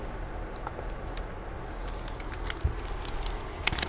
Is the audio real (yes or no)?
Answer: yes